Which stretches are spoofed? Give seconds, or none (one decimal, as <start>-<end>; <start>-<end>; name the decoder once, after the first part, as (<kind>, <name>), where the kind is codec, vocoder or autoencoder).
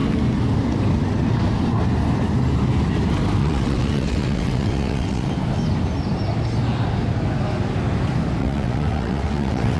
3.4-5.3 (vocoder, WaveNeXt); 8.4-9.8